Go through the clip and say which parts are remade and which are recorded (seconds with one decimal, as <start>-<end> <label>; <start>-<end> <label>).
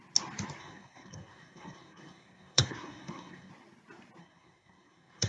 0.0-0.6 recorded; 0.6-3.5 remade; 3.5-4.2 recorded; 4.2-5.3 remade